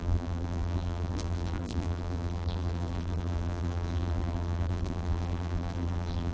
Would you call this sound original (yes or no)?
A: no